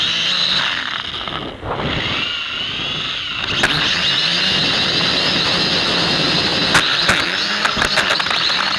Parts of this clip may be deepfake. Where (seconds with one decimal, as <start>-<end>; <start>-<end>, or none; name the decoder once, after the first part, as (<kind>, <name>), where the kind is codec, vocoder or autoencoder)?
none